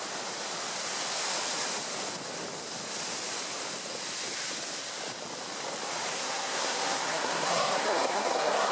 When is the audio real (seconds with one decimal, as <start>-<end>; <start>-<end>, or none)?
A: 0.0-6.1